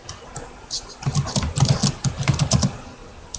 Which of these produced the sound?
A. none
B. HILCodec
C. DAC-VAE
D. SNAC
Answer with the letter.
A